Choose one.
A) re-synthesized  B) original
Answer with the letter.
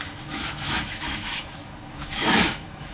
A